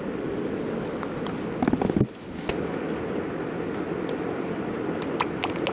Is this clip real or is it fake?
real